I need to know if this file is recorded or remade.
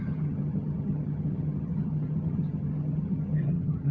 remade